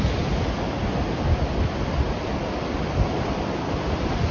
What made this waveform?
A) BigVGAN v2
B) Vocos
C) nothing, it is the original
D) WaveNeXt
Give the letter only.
C